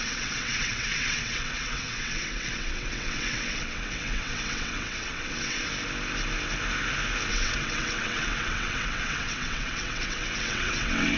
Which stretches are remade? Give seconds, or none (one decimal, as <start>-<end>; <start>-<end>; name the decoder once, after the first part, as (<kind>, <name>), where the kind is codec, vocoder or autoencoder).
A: 0.0-5.7 (vocoder, WaveNeXt); 7.3-11.2